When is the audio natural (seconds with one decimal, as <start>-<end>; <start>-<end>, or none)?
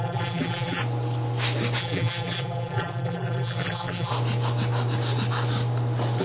0.8-1.8; 4.1-6.2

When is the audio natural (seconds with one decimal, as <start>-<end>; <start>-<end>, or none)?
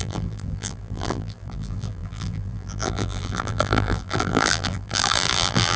none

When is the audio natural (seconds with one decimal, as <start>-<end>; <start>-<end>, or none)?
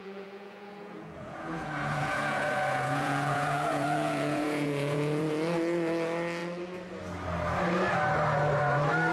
5.2-9.1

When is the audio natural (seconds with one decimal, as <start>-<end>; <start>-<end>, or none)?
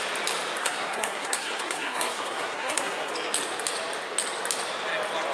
0.0-0.6; 3.1-5.3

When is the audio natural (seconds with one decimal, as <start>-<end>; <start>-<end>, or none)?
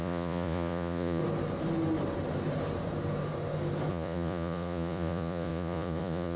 1.2-3.9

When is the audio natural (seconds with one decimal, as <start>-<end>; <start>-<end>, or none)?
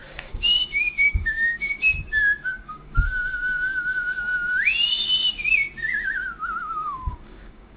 4.1-6.6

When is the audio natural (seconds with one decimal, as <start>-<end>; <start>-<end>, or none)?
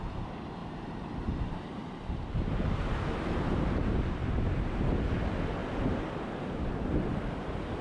0.0-0.6; 5.0-7.8